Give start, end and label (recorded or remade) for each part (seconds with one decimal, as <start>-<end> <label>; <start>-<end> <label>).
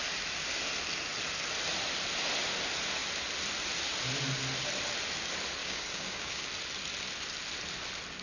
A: 0.0-5.6 recorded; 5.6-6.5 remade; 6.5-8.2 recorded